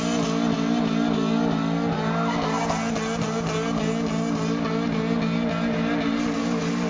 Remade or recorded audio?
recorded